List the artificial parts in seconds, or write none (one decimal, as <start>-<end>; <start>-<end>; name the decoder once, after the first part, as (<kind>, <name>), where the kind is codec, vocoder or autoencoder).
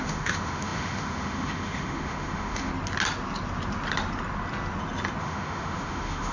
0.0-2.7 (autoencoder, DAC-VAE); 5.2-6.3